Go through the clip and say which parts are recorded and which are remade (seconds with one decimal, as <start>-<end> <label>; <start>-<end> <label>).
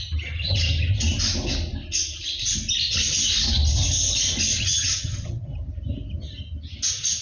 0.0-4.6 recorded; 4.6-5.5 remade; 5.5-7.2 recorded